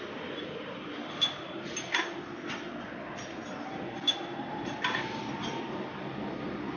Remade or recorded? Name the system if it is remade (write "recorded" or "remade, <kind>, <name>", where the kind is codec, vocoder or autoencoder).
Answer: recorded